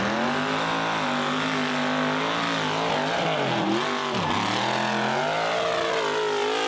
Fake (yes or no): no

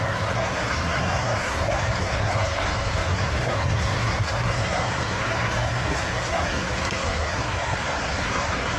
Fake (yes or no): yes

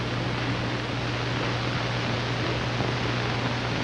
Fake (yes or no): no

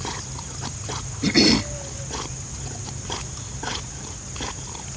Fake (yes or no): no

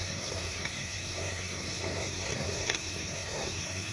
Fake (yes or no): yes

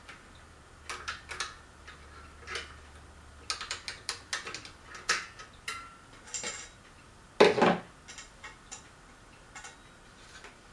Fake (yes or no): no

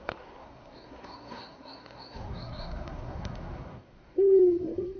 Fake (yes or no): yes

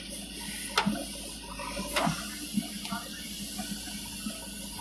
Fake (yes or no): no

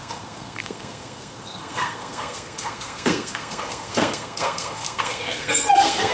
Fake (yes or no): yes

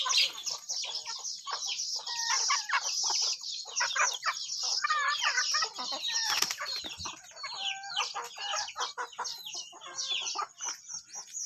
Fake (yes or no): no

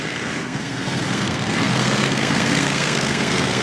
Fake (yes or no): yes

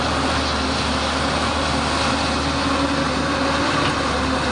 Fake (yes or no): no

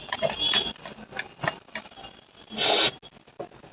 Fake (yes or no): no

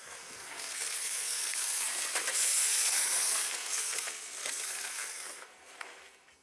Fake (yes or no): yes